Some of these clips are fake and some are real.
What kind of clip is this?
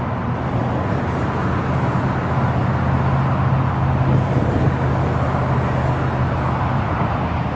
real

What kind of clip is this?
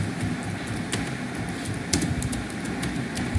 real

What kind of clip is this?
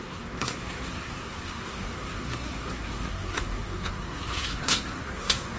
fake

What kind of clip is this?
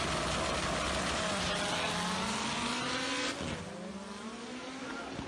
real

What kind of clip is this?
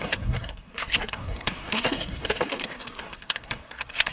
fake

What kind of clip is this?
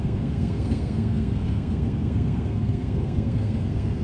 fake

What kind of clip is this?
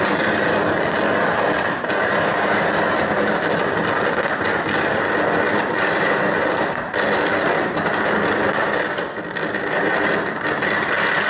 real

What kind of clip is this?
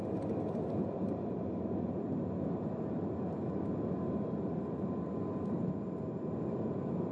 real